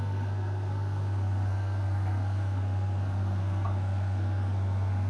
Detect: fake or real fake